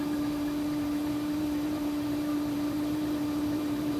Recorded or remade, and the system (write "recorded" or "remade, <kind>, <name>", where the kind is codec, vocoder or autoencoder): remade, vocoder, BigVGAN v2